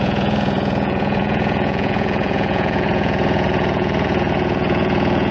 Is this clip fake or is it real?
fake